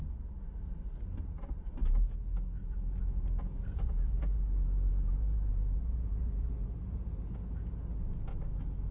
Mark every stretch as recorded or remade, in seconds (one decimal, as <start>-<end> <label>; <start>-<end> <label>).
0.0-2.6 recorded; 2.6-7.3 remade; 7.3-8.9 recorded